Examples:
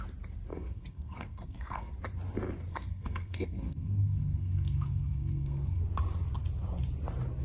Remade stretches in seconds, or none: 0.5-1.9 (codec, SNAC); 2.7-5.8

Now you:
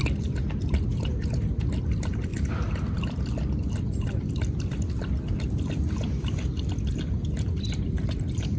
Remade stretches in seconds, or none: 2.3-4.2 (vocoder, BigVGAN v2)